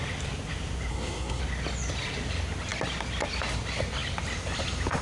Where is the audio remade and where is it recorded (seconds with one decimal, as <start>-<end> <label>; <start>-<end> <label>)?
0.0-0.9 recorded; 0.9-1.4 remade; 1.4-5.0 recorded